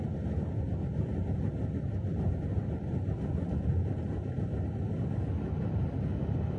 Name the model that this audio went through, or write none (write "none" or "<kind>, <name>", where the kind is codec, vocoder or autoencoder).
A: none